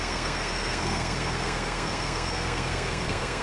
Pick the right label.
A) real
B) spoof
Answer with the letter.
B